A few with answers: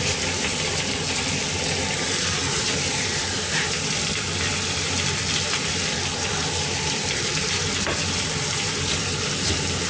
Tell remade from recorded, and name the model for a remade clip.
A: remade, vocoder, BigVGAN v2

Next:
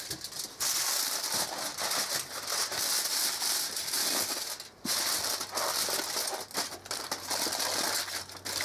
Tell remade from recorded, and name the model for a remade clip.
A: recorded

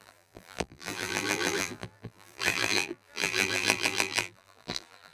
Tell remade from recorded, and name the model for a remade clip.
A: remade, vocoder, BigVGAN v2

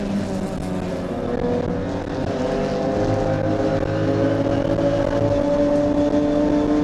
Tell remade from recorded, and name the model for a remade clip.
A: recorded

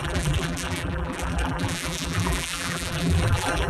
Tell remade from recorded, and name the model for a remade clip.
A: remade, vocoder, BigVGAN v2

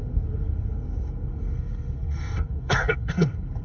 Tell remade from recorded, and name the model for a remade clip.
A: remade, codec, SNAC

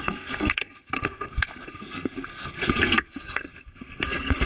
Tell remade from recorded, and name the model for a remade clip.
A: remade, codec, SNAC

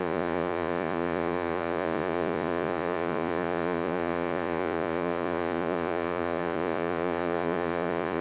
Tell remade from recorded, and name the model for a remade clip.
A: remade, vocoder, Vocos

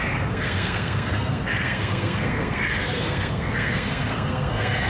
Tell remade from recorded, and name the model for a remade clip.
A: remade, codec, SNAC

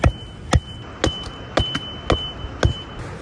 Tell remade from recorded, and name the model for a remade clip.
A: recorded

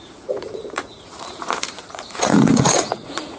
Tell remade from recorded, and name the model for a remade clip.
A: remade, vocoder, Vocos